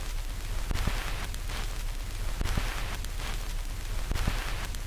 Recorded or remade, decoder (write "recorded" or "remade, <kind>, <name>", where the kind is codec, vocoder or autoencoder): recorded